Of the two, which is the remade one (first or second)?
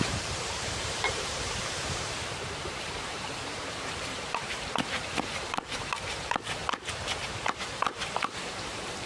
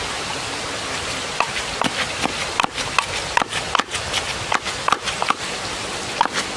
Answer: first